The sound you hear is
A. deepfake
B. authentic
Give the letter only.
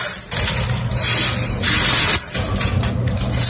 B